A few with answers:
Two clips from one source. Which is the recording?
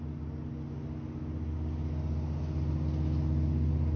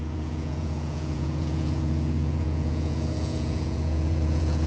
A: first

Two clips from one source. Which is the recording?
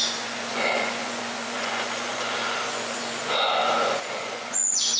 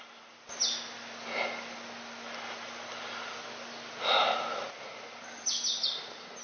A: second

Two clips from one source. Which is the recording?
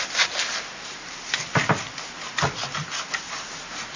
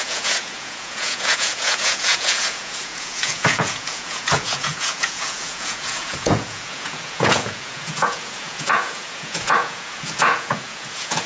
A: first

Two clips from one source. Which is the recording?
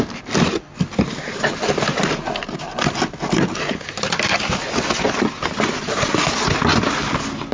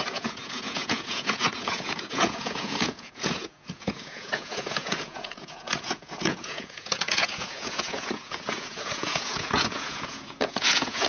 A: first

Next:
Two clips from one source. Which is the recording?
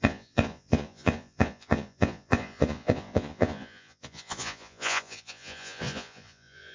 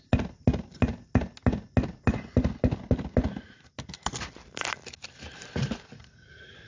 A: second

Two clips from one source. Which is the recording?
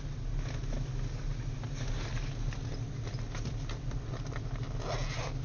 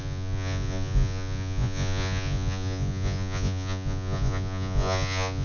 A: first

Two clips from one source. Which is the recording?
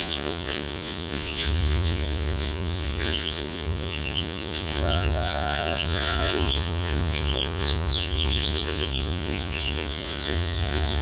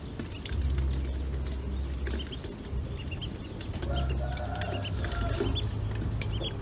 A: second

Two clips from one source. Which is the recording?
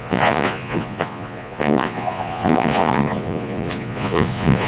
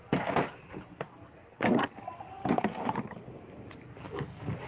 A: second